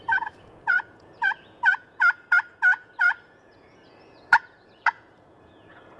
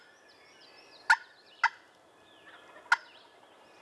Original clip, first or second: second